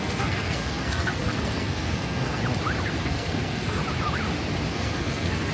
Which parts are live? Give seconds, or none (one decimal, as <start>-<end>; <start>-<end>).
2.4-2.9; 3.8-4.7